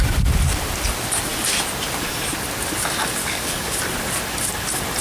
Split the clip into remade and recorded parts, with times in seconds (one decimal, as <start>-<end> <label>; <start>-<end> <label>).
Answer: 0.0-3.2 recorded; 3.2-3.8 remade; 3.8-5.0 recorded